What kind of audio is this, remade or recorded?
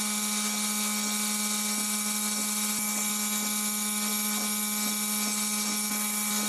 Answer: recorded